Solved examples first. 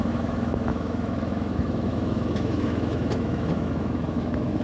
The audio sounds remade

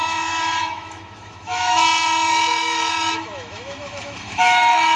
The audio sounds remade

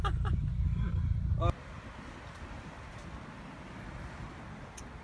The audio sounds recorded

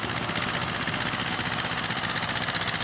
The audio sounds recorded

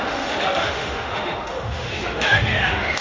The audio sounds remade